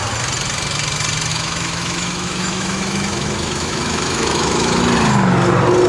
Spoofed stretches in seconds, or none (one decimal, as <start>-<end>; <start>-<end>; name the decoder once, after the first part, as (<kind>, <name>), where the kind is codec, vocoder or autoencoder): 1.3-4.8 (autoencoder, DAC-VAE)